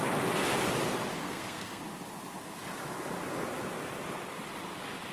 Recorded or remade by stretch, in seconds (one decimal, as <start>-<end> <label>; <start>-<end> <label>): 0.0-1.1 recorded; 1.1-1.8 remade; 1.8-5.1 recorded